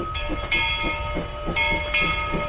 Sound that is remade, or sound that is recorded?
recorded